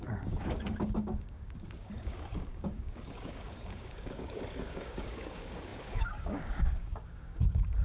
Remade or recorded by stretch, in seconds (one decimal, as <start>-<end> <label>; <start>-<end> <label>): 0.0-7.8 remade